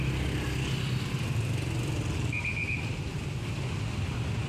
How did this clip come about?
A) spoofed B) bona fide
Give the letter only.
B